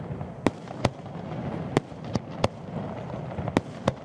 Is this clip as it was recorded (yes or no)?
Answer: yes